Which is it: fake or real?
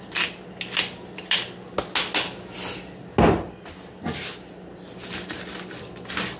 real